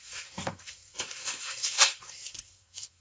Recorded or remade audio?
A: remade